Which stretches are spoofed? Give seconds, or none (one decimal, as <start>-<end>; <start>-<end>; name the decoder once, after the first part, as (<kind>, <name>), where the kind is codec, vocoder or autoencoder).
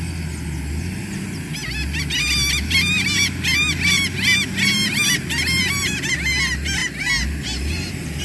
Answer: none